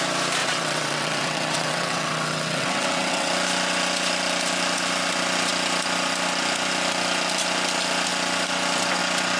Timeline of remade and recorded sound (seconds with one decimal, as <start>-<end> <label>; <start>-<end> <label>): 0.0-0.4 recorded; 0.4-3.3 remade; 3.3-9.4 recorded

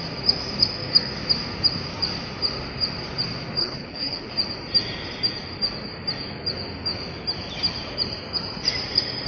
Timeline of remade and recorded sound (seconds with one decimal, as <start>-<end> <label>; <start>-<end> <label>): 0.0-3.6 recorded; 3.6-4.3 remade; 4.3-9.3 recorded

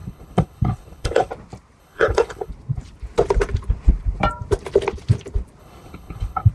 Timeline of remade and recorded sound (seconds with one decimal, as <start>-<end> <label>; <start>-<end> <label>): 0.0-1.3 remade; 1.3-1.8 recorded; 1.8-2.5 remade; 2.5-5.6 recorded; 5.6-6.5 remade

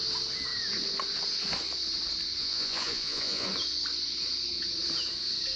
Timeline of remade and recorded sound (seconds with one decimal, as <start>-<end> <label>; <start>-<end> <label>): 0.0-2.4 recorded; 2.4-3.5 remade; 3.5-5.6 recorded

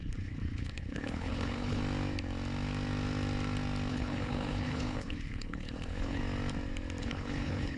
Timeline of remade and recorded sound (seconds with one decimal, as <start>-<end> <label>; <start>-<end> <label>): 0.0-1.8 remade; 1.8-3.9 recorded; 3.9-6.2 remade; 6.2-7.0 recorded; 7.0-7.8 remade

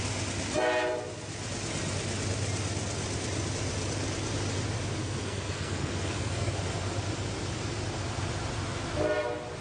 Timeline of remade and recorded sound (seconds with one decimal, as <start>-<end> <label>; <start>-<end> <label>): 0.0-5.0 recorded; 5.0-6.5 remade; 6.5-9.6 recorded

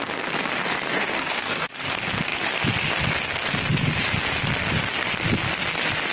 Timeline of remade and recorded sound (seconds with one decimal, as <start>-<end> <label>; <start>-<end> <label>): 0.0-0.9 recorded; 0.9-1.7 remade; 1.7-6.1 recorded